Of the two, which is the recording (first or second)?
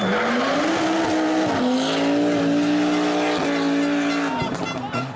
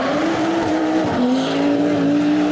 first